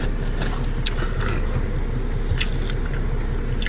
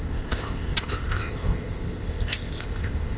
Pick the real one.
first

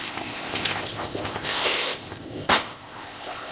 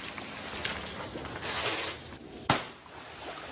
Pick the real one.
second